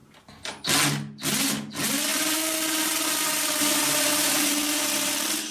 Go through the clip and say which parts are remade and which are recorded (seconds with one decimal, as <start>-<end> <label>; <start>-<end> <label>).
0.0-0.7 remade; 0.7-2.1 recorded; 2.1-5.5 remade